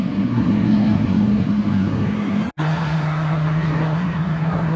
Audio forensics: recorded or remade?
remade